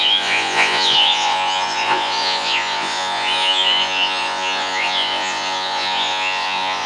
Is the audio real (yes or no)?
no